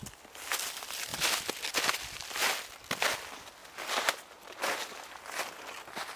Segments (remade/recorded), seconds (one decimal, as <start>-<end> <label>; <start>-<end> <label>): 0.0-6.2 recorded